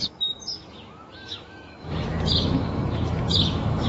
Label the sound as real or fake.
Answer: fake